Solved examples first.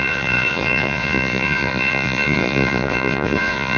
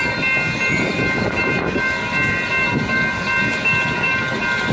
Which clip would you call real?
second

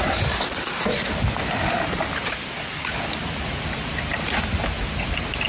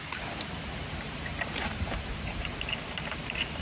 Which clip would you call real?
first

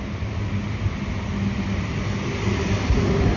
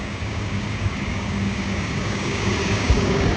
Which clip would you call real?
first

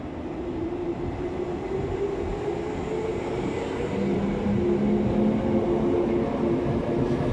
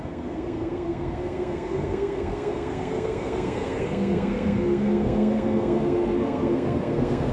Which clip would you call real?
first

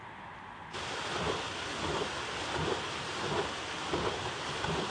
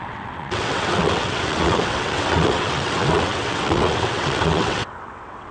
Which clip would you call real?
first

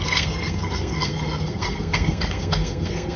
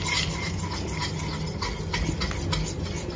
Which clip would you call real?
second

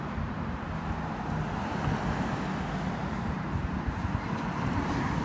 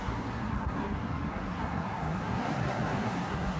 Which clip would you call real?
first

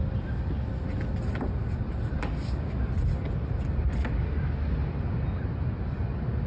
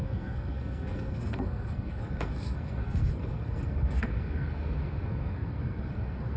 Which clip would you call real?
first